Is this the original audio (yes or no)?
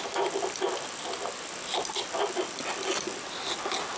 yes